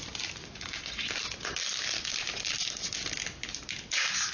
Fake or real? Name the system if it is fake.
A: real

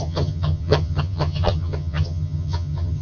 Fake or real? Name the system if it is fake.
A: fake, vocoder, HiFi-GAN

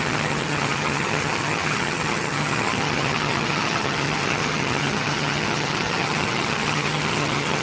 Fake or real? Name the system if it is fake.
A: fake, vocoder, HiFi-GAN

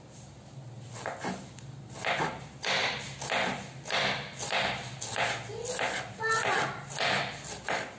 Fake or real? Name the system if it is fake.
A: real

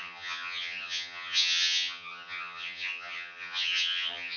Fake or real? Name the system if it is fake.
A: fake, vocoder, HiFi-GAN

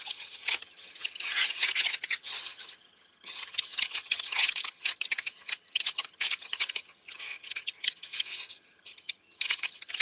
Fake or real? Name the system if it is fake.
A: fake, vocoder, HiFi-GAN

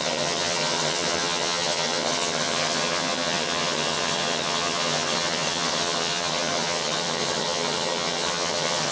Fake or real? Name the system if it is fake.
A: fake, vocoder, HiFi-GAN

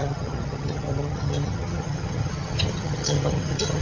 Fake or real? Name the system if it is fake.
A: fake, vocoder, HiFi-GAN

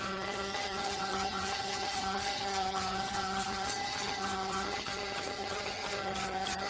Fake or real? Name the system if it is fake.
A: fake, vocoder, HiFi-GAN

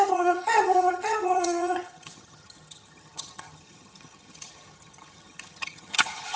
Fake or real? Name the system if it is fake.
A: fake, vocoder, HiFi-GAN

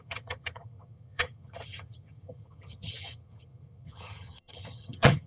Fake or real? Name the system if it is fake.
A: fake, vocoder, HiFi-GAN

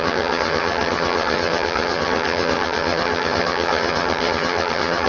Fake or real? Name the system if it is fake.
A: fake, vocoder, HiFi-GAN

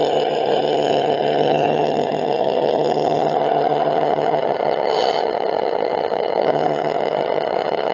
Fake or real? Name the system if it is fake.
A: fake, vocoder, HiFi-GAN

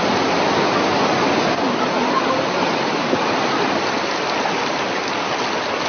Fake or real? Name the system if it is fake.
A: real